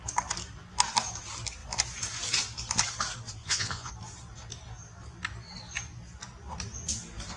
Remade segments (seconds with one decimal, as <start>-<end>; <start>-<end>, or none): 3.4-3.9